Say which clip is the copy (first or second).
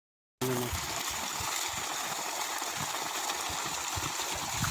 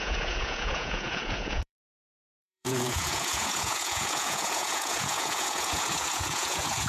second